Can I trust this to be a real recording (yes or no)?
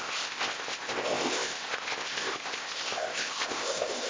no